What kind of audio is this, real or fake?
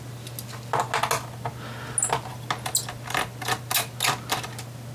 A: real